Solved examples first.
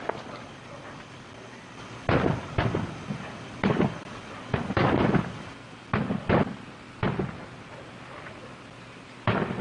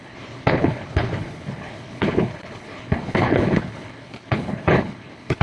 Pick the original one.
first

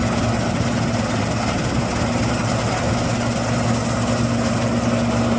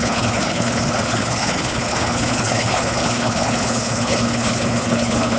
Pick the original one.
first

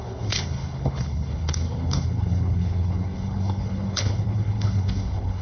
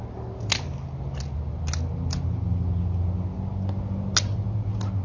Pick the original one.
second